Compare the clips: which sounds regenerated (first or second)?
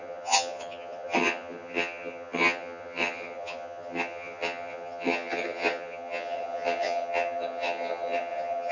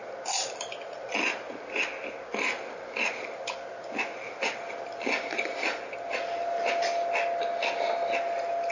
first